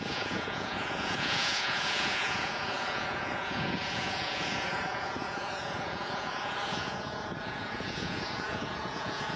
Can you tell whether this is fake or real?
fake